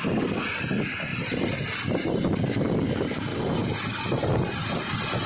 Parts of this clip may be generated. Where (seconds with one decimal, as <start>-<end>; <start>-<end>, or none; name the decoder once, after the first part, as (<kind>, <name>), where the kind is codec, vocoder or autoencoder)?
3.3-3.8 (vocoder, BigVGAN v2)